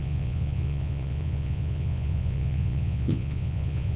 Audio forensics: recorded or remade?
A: remade